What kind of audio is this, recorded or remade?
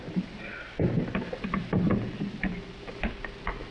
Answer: recorded